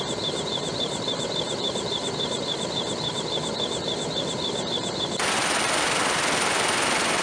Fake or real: real